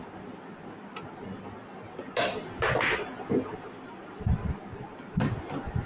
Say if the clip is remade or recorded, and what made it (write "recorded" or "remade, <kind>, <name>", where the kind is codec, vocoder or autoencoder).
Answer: recorded